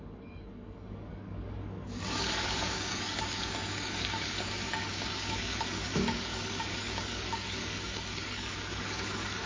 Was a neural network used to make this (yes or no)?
yes